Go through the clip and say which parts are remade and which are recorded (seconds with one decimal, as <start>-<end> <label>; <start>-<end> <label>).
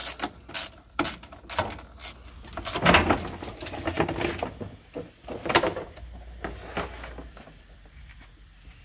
0.0-0.5 remade; 0.5-8.8 recorded